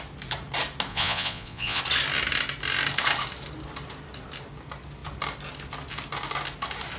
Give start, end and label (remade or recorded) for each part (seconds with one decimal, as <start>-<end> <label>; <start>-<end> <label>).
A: 0.0-0.9 recorded; 0.9-1.8 remade; 1.8-7.0 recorded